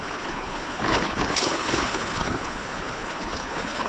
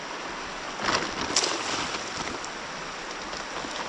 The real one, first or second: second